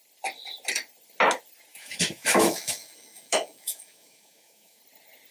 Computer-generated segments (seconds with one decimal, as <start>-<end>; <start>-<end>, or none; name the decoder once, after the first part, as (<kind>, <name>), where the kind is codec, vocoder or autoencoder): 1.7-4.8 (autoencoder, DAC-VAE)

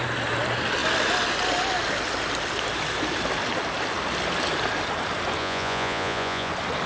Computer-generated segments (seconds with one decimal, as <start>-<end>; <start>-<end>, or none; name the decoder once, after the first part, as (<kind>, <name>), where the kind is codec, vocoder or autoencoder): 5.4-6.5 (vocoder, Vocos)

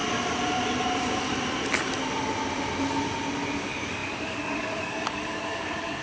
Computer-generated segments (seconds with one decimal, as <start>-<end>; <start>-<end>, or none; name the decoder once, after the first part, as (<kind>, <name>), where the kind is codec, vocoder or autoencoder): 3.6-6.0 (codec, DAC)

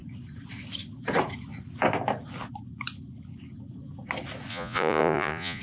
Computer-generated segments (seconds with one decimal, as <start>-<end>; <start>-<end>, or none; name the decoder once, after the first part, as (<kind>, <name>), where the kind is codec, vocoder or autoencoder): 4.5-5.6 (vocoder, Vocos)

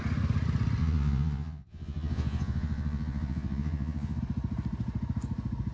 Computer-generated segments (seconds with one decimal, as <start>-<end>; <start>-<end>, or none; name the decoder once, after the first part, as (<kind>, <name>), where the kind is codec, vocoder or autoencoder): 0.8-4.2 (vocoder, Vocos)

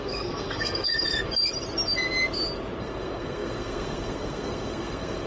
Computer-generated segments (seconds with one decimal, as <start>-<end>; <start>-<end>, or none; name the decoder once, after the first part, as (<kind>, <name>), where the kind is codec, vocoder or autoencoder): 0.0-0.9 (codec, SNAC); 2.8-5.3

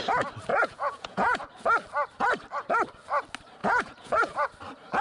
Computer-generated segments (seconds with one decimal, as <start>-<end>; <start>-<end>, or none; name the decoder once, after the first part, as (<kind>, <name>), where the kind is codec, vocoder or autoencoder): 0.5-1.4 (vocoder, Vocos); 3.6-4.5